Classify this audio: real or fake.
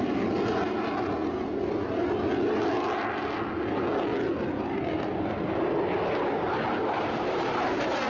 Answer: real